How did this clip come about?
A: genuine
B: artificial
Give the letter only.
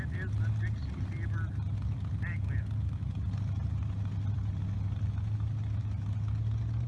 A